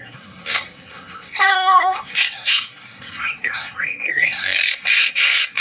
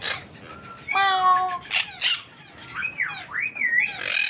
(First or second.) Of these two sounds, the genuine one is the second